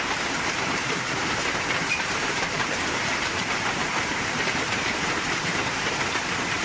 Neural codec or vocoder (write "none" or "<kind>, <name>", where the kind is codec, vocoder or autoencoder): vocoder, BigVGAN v2